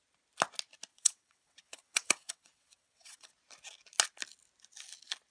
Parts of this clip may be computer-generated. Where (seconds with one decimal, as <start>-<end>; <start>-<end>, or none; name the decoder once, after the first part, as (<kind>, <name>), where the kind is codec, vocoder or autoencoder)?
0.9-3.3 (vocoder, WaveNeXt)